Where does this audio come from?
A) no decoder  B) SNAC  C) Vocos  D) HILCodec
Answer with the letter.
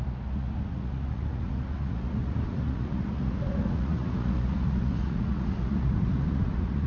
C